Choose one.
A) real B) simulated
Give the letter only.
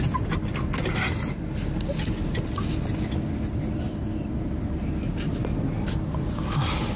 A